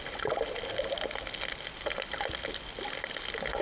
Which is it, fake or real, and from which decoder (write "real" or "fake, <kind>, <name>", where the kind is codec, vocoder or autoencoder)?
real